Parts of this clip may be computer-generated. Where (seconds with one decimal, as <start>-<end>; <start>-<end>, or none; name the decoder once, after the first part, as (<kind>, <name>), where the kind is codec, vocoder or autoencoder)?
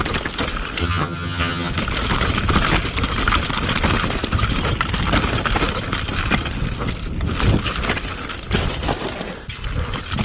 0.8-1.7 (vocoder, HiFi-GAN)